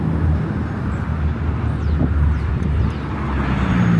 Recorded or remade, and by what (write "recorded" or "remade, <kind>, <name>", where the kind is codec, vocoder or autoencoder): recorded